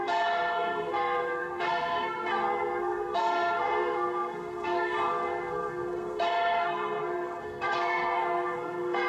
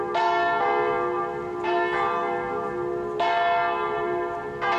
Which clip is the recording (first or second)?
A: second